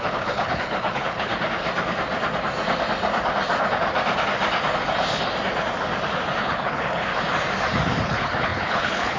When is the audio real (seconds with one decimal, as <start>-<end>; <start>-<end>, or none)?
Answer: 1.3-6.4; 7.1-8.1

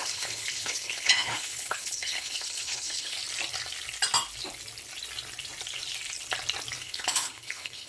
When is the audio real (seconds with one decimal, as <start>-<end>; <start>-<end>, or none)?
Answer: 3.2-6.8

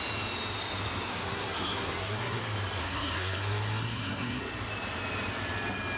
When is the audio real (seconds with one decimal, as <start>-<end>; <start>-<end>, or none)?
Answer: 0.0-1.1; 2.4-2.8; 4.4-6.0

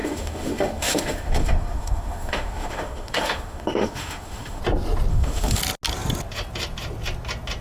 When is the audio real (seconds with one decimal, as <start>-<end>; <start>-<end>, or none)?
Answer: 4.6-5.1; 5.6-7.6

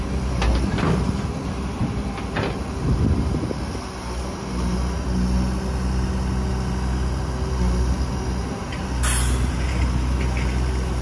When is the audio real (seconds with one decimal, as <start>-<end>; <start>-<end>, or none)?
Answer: 0.0-11.0